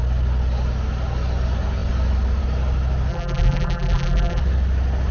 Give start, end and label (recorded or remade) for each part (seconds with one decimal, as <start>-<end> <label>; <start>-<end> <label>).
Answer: 0.0-3.1 recorded; 3.1-4.4 remade; 4.4-5.1 recorded